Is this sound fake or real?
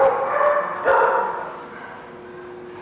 real